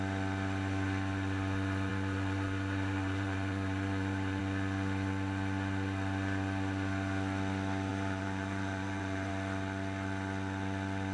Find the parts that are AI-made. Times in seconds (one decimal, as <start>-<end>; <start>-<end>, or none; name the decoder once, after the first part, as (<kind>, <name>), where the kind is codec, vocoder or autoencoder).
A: 1.9-4.4 (vocoder, BigVGAN v2); 7.9-9.3